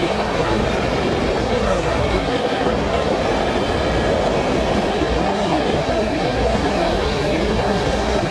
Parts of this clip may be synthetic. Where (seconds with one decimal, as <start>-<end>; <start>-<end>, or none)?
0.0-0.6; 1.4-3.2; 4.9-8.3